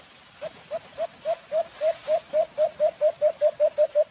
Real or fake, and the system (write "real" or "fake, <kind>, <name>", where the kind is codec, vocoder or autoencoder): real